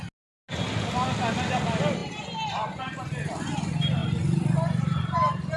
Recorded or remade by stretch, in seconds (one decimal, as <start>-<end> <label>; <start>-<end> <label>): 0.0-5.6 recorded